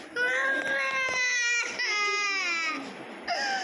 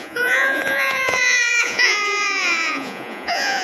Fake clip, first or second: second